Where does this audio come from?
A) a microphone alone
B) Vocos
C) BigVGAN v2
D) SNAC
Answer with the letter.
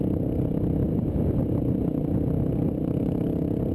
A